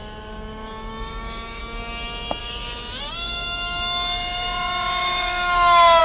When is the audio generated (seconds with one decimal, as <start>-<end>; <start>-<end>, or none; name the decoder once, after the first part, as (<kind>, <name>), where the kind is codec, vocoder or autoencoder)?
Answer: 0.0-1.6 (codec, DAC); 2.4-6.0